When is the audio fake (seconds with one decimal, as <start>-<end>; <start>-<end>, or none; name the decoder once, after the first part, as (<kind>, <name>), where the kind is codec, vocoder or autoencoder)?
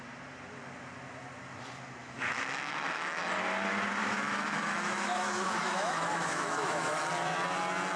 2.0-3.2 (autoencoder, DAC-VAE); 4.0-7.1